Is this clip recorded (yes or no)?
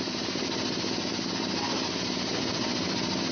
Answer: no